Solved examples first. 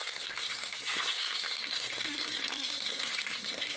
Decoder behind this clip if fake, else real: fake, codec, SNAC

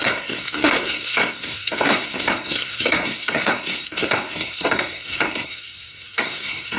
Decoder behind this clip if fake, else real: fake, codec, SNAC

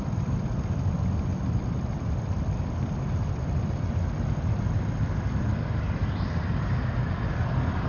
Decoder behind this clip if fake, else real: real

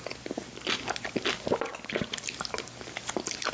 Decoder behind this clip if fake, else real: real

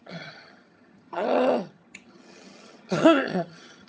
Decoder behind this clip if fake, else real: fake, vocoder, HiFi-GAN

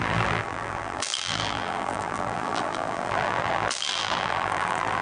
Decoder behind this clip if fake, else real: fake, vocoder, BigVGAN v2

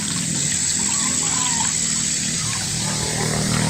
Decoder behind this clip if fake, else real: real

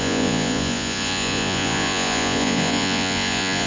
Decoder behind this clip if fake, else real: fake, vocoder, Vocos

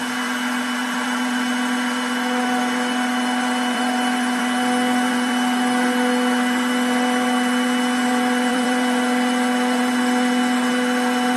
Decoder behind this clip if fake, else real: fake, vocoder, BigVGAN v2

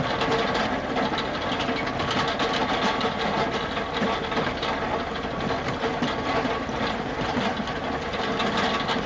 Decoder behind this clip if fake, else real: real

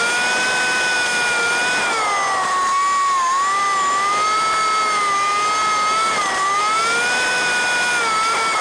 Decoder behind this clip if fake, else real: real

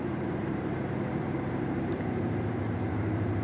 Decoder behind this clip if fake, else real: fake, vocoder, BigVGAN v2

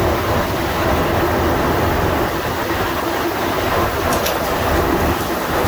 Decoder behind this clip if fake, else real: real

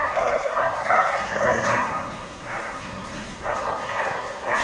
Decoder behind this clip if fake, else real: fake, codec, SNAC